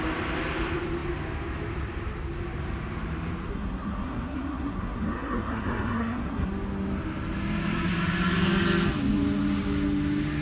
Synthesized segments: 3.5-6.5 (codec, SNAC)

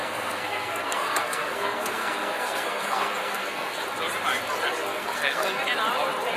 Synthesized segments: 0.0-3.8 (codec, SNAC); 4.8-5.6

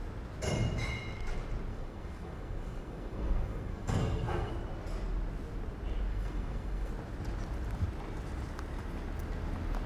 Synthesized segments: 1.7-4.5 (codec, SNAC); 6.1-6.9

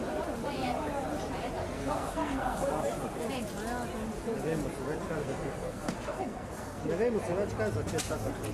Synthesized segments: 1.6-2.7 (codec, SNAC); 5.2-6.8